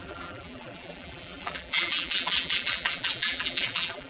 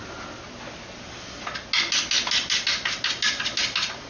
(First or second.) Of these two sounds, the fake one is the first